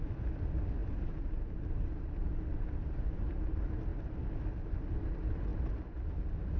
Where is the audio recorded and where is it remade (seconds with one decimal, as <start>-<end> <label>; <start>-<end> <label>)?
0.0-0.8 recorded; 0.8-3.5 remade; 3.5-6.6 recorded